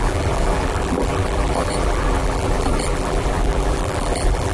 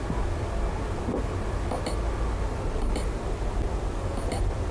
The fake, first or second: first